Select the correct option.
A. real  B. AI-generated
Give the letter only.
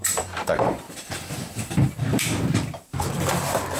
B